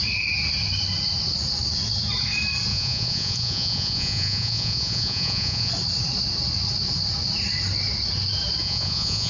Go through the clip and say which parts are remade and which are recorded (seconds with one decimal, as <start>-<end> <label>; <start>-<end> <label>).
0.0-2.7 recorded; 2.7-5.7 remade; 5.7-8.6 recorded; 8.6-9.3 remade